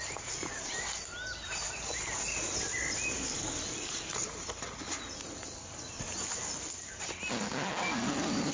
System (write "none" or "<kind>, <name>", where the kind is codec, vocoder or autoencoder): none